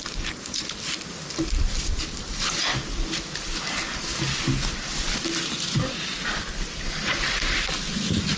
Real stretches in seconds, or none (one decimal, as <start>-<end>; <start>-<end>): 4.1-5.1